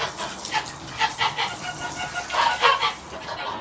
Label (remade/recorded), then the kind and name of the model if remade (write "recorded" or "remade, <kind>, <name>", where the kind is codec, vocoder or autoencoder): recorded